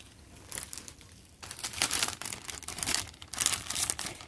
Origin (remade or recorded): remade